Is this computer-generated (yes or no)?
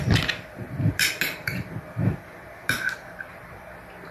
yes